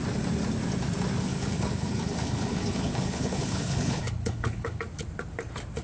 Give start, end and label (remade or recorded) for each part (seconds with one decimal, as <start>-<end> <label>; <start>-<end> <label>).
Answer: 0.0-1.3 recorded; 1.3-4.8 remade; 4.8-5.8 recorded